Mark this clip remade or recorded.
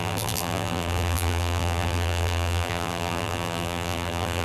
remade